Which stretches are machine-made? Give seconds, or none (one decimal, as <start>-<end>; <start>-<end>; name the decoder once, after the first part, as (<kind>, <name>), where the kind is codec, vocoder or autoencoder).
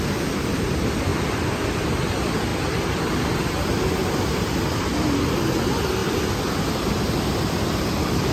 2.5-3.0 (vocoder, BigVGAN v2)